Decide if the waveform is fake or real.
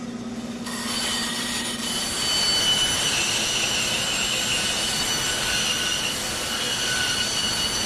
real